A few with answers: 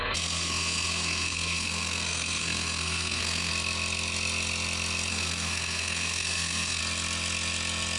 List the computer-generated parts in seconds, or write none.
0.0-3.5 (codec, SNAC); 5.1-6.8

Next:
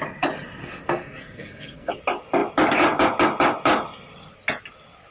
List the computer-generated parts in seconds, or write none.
0.6-1.9 (codec, SNAC)

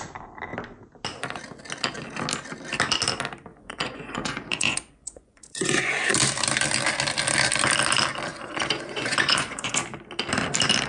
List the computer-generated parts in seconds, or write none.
3.5-6.1 (vocoder, Vocos); 8.3-9.7

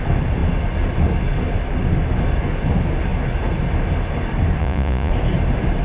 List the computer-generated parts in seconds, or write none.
4.6-5.1 (vocoder, Vocos)

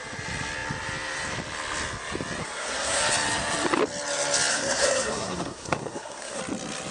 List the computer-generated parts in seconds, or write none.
2.4-3.0 (codec, SNAC); 4.5-6.4